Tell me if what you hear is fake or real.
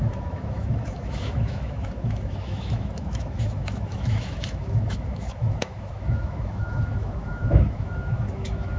fake